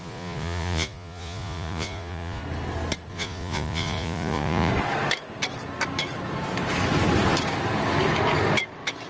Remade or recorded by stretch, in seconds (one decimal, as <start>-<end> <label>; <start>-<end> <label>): 0.0-2.4 remade; 2.4-3.1 recorded; 3.1-4.7 remade; 4.7-9.1 recorded